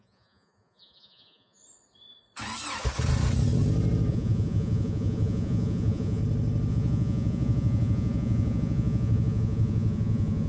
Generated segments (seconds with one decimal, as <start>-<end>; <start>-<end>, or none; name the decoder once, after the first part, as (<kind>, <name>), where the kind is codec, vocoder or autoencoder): 0.0-1.6 (vocoder, Vocos); 4.1-6.2; 6.7-10.5